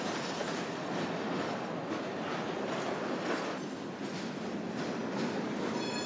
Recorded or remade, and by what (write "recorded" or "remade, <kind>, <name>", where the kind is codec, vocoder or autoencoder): recorded